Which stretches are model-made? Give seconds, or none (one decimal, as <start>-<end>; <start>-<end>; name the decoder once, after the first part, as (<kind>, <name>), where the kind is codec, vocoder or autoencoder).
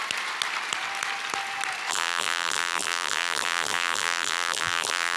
1.9-5.2 (vocoder, BigVGAN v2)